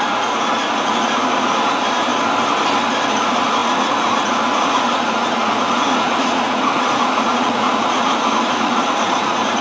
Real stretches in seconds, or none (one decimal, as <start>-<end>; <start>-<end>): 2.1-3.1